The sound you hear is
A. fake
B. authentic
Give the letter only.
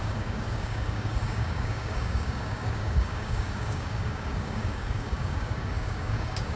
A